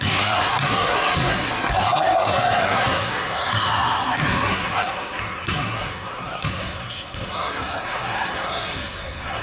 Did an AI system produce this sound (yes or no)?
yes